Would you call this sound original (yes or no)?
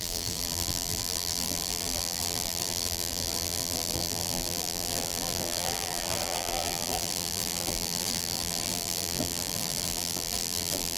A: no